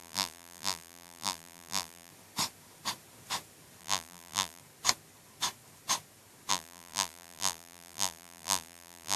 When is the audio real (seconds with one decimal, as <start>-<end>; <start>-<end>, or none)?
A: 2.1-3.8; 4.6-6.5

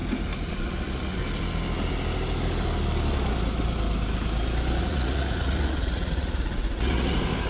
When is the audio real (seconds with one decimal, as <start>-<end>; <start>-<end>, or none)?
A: 0.0-0.5; 1.2-4.8

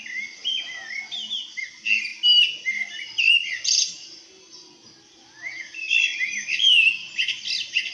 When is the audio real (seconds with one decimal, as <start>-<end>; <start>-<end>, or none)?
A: 0.0-7.9

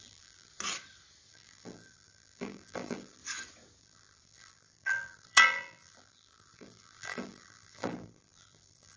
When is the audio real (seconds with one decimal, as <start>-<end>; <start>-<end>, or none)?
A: 0.5-1.3; 3.2-3.8

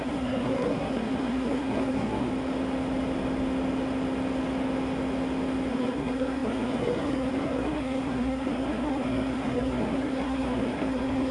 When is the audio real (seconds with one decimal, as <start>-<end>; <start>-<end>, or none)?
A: 2.3-5.7

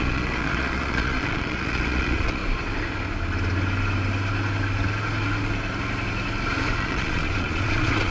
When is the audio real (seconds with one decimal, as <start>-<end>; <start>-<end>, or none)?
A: 2.4-6.8